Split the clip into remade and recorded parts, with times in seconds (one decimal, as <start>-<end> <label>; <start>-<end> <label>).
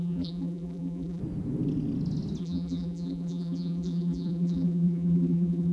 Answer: 0.0-1.2 remade; 1.2-2.4 recorded; 2.4-5.7 remade